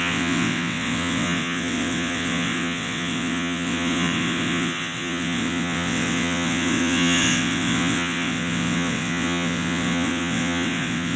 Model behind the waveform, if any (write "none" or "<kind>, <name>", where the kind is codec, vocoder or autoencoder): vocoder, WaveNeXt